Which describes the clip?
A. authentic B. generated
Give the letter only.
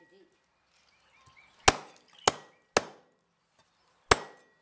A